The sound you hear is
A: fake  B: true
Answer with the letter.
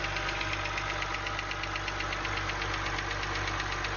B